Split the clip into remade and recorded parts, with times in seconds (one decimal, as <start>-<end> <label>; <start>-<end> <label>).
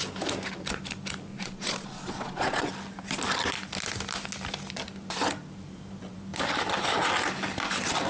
0.0-1.3 recorded; 1.3-2.7 remade; 2.7-8.1 recorded